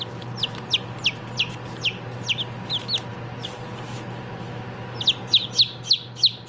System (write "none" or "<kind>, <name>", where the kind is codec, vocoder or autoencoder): none